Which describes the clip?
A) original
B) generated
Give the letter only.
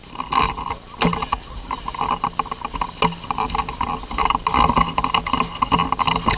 A